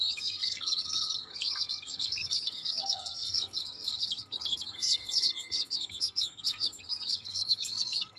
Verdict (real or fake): fake